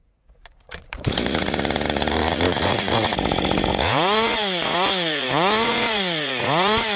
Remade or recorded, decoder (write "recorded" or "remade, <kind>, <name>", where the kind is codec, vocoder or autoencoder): remade, vocoder, Vocos